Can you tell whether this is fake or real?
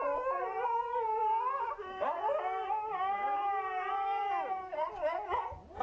fake